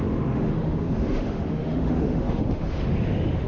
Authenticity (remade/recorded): remade